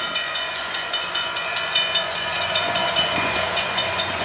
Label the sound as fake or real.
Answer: fake